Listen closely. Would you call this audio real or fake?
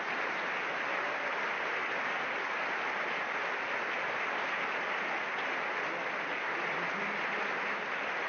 real